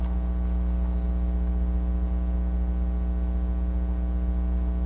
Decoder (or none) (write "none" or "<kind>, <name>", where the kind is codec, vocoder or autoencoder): none